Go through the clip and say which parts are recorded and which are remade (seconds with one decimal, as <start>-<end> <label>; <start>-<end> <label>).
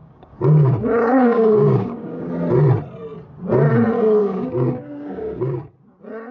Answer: 0.0-2.3 remade; 2.3-4.2 recorded; 4.2-5.7 remade; 5.7-6.3 recorded